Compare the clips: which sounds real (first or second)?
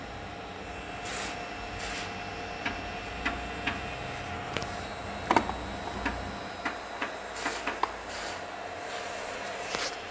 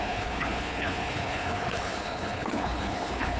first